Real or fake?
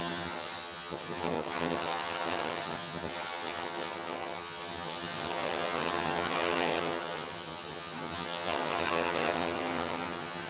fake